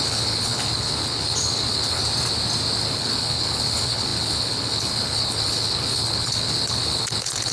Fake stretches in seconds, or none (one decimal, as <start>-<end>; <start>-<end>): 0.0-2.0; 2.8-7.5